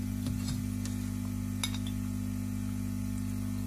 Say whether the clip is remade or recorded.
recorded